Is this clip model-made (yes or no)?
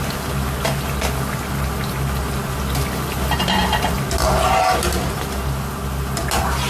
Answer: no